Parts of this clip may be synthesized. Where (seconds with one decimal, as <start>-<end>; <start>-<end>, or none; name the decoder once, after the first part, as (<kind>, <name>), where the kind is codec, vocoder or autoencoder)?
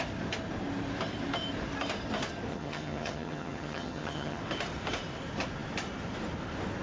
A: 2.5-4.4 (vocoder, HiFi-GAN)